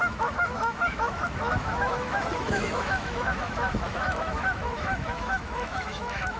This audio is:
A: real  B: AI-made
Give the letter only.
B